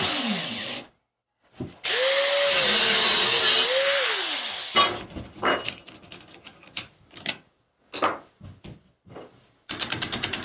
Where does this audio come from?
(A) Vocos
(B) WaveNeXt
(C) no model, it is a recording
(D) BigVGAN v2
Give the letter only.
C